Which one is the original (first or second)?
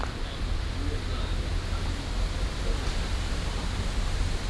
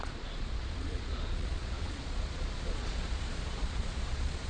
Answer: first